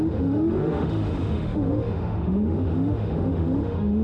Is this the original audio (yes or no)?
no